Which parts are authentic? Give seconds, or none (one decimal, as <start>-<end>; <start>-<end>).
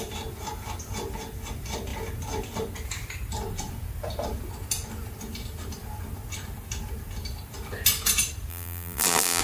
0.0-8.5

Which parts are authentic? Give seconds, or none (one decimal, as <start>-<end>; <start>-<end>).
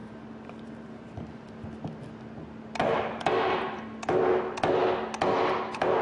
1.3-2.8; 3.8-6.0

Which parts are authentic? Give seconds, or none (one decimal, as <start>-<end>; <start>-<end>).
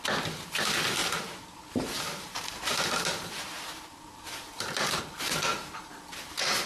0.0-1.0; 5.0-5.5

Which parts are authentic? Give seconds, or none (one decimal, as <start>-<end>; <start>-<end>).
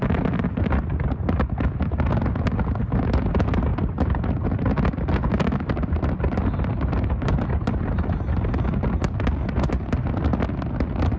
0.0-11.2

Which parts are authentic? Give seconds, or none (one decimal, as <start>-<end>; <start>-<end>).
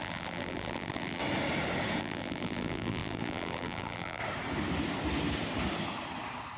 1.2-2.0; 4.2-6.6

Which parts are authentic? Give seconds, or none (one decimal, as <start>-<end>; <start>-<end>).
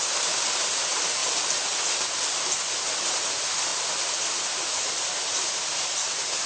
1.2-2.7; 3.7-4.4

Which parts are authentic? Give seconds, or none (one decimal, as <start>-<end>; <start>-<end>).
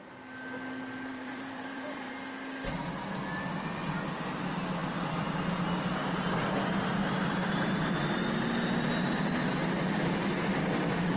0.0-1.1; 2.1-11.2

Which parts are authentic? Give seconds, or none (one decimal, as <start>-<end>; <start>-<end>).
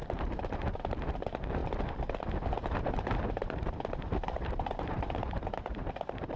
1.6-2.8